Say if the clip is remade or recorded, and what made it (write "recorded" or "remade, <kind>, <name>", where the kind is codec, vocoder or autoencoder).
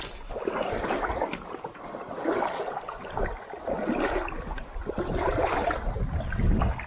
recorded